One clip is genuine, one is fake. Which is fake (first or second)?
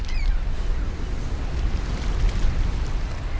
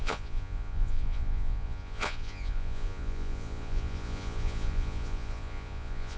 second